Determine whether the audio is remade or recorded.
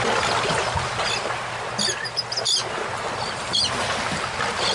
recorded